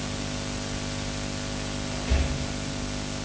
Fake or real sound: real